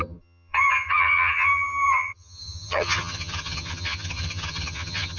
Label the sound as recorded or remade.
remade